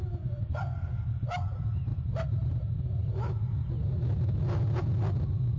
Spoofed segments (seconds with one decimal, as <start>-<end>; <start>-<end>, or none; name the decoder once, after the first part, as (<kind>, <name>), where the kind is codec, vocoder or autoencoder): none